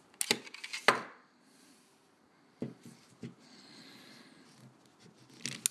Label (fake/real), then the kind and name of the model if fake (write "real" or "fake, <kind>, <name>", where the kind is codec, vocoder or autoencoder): real